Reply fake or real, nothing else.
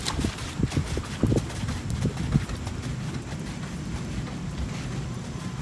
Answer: real